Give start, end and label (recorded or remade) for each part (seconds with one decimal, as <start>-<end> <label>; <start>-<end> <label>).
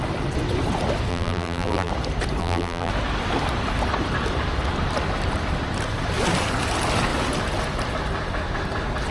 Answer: 0.0-1.1 recorded; 1.1-1.9 remade; 1.9-2.4 recorded; 2.4-2.9 remade; 2.9-9.1 recorded